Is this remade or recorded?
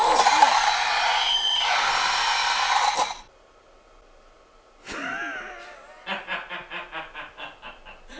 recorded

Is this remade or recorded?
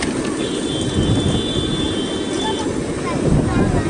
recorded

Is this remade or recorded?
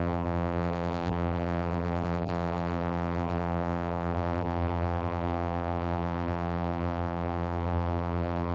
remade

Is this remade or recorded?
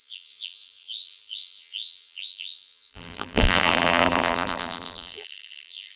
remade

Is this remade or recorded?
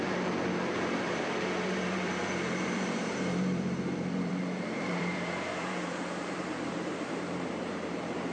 remade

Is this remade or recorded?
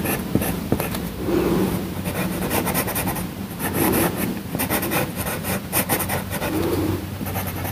remade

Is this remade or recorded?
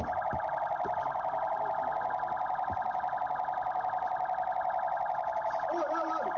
recorded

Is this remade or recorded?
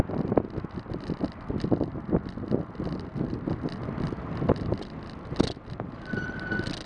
recorded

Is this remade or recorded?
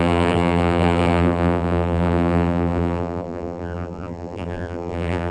remade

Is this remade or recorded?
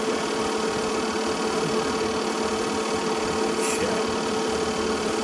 recorded